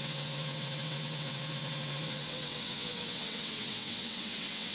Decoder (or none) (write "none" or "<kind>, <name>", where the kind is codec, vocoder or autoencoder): vocoder, WaveNeXt